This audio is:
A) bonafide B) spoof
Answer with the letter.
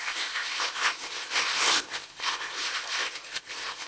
B